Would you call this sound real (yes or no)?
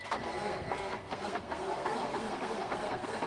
no